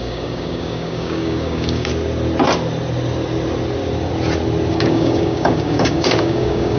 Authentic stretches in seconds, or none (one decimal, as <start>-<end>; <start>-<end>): 1.9-4.7